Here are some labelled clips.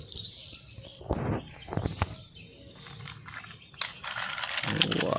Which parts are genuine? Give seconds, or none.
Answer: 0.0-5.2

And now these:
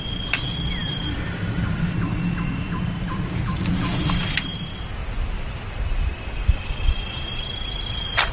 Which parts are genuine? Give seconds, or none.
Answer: 0.0-8.3

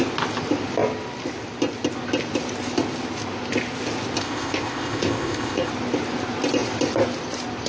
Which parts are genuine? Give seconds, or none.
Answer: 0.0-4.2; 5.7-7.7

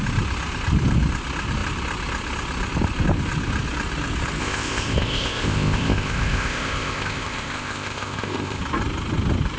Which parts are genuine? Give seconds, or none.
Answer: 0.0-4.4; 8.6-9.6

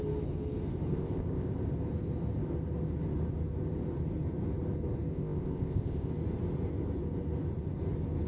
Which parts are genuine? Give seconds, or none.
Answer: 0.0-0.9; 1.5-5.1; 6.1-8.3

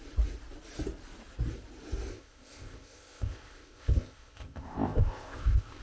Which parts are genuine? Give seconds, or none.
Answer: 0.0-2.1

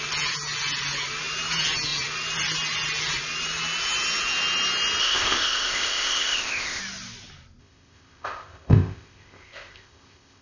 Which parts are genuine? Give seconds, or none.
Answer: 0.0-5.0; 6.8-7.6

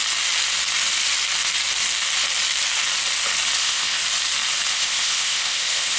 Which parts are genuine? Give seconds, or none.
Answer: 0.0-3.6; 4.0-4.7